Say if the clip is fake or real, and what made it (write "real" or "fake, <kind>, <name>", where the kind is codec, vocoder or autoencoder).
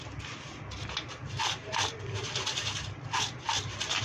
real